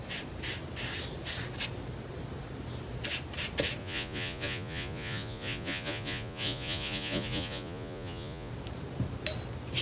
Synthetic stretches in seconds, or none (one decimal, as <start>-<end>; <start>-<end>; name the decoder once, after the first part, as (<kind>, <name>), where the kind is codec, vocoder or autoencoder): 3.8-8.5 (vocoder, Vocos)